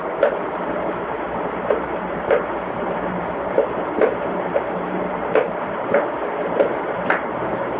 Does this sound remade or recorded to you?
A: remade